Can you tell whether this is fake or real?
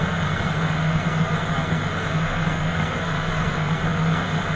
fake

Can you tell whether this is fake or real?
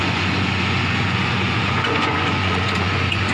fake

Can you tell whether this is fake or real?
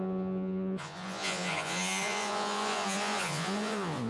fake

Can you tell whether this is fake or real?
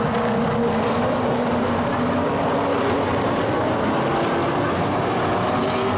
real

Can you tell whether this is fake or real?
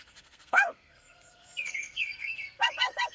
fake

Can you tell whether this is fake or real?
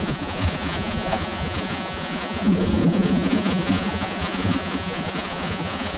fake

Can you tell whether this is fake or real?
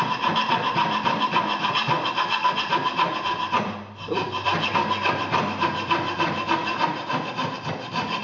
fake